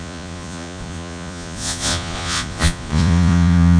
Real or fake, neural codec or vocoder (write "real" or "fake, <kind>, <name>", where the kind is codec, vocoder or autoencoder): fake, vocoder, Vocos